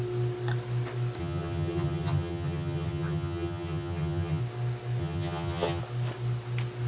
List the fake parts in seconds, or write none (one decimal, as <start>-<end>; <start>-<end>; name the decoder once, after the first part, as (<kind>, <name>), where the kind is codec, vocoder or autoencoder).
1.2-4.4 (vocoder, HiFi-GAN); 5.0-5.8